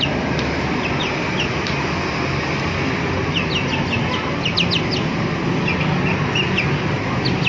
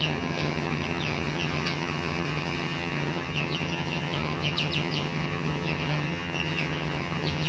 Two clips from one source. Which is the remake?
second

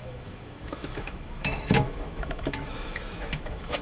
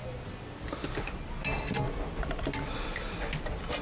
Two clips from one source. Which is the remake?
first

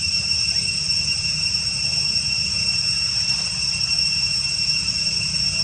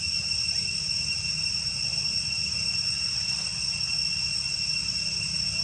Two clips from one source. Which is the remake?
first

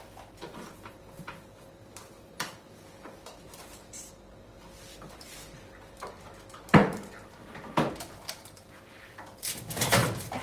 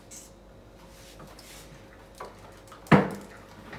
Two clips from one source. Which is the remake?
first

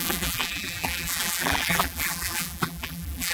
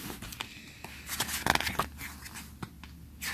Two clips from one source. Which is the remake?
first